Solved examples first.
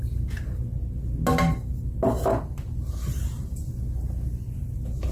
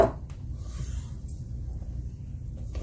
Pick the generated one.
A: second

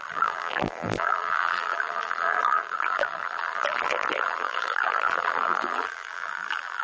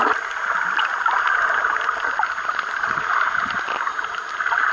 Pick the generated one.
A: first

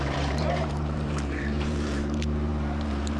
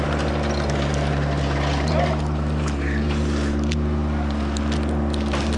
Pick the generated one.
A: first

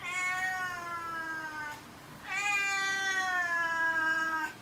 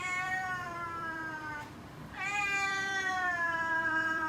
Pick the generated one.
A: second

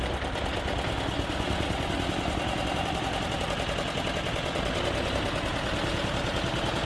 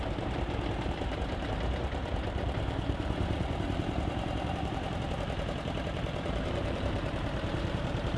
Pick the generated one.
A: second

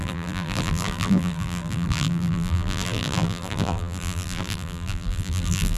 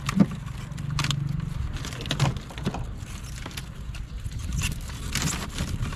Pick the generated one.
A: first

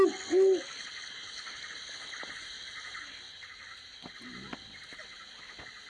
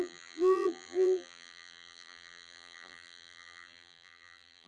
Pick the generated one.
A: second